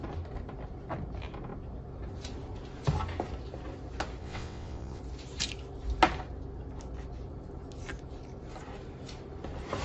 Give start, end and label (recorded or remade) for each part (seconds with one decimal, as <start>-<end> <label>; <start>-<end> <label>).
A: 0.0-4.2 recorded; 4.2-5.0 remade; 5.0-9.8 recorded